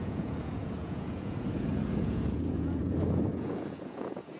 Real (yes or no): no